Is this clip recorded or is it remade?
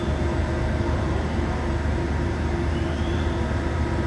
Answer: remade